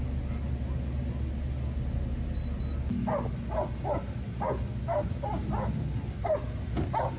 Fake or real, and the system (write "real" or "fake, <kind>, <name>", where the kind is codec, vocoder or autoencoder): real